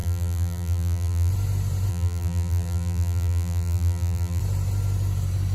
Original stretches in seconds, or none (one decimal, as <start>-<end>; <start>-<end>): 1.3-1.9; 4.4-5.5